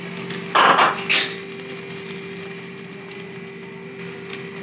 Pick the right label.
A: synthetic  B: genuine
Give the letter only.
B